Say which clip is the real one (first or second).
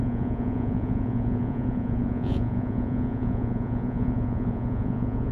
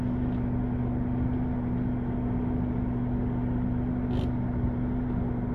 second